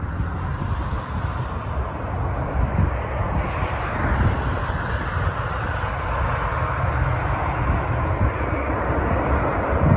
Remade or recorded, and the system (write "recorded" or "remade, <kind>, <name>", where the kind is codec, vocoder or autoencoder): recorded